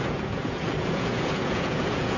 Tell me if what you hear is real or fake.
fake